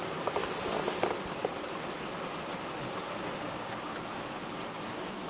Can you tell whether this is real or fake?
real